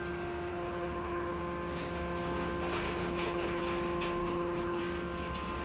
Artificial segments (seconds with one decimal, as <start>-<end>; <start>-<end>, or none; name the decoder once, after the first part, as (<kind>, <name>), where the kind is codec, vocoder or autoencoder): 0.5-1.4 (codec, HILCodec); 3.0-3.6; 4.2-4.8